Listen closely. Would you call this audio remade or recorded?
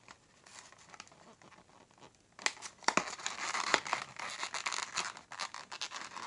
recorded